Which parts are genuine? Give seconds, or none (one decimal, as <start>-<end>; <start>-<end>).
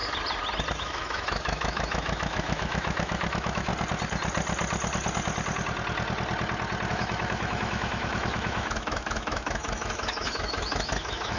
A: 0.0-0.7; 3.7-6.9